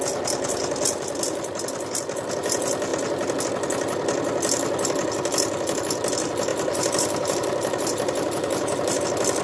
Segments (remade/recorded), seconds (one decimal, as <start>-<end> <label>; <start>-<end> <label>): 0.0-6.5 recorded; 6.5-9.0 remade; 9.0-9.4 recorded